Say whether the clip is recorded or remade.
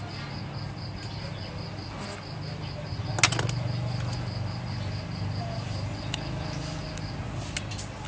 recorded